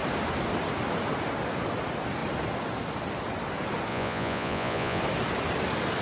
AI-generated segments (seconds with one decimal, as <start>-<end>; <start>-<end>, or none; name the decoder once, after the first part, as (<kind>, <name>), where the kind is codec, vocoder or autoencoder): 3.9-5.0 (vocoder, Vocos)